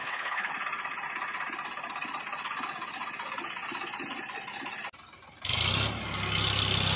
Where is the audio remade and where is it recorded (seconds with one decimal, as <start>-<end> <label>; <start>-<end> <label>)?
0.0-0.5 remade; 0.5-7.0 recorded